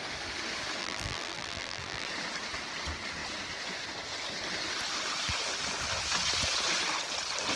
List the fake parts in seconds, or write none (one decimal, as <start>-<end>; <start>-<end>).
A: 0.8-2.1